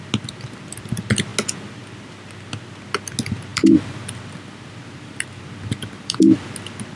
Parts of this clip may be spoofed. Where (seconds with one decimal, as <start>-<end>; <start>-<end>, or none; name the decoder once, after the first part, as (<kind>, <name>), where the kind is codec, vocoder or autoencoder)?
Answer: 3.5-6.5 (vocoder, BigVGAN v2)